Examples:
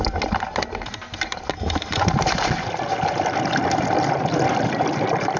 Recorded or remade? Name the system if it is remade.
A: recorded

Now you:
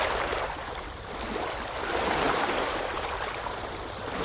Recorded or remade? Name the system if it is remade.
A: recorded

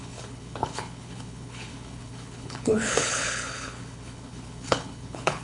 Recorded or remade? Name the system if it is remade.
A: remade, codec, HILCodec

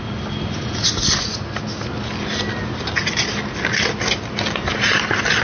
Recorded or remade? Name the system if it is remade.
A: recorded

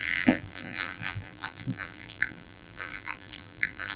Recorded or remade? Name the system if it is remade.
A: remade, vocoder, BigVGAN v2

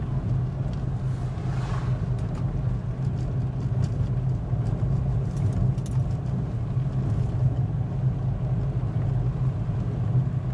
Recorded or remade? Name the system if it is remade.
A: recorded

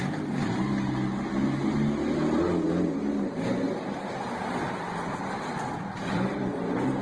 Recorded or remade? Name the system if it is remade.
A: recorded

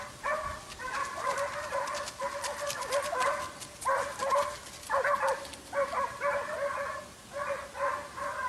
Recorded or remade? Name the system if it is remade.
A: recorded